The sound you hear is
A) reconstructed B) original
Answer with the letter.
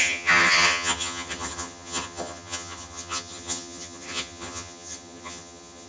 A